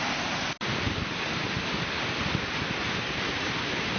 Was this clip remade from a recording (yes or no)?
no